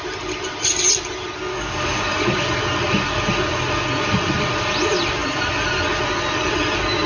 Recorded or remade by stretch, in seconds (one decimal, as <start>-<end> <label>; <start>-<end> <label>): 0.0-1.5 recorded; 1.5-2.0 remade; 2.0-7.1 recorded